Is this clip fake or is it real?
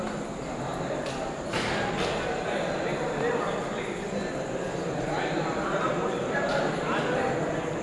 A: real